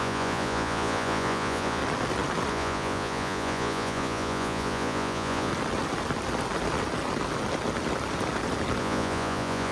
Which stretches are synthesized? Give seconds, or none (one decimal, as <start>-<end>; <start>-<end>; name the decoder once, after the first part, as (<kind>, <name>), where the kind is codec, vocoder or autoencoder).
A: 0.0-1.8 (vocoder, Vocos); 2.5-5.5; 8.8-9.7